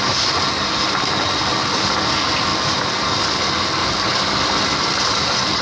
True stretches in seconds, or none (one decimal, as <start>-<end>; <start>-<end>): 0.0-5.6